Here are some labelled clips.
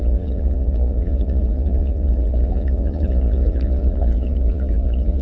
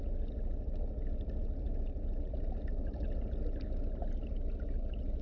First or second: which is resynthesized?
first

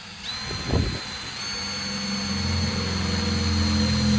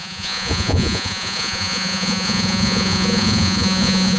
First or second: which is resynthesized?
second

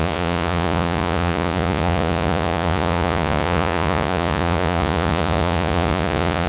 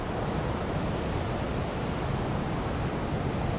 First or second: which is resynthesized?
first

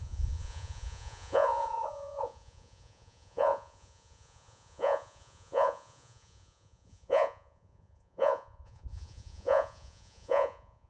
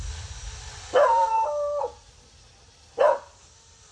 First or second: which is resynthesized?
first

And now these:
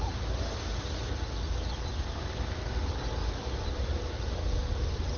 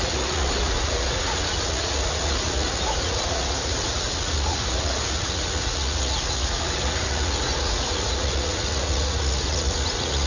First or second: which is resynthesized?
second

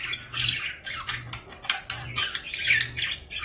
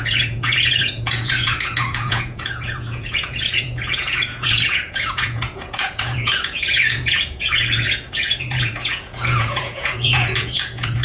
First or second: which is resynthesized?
second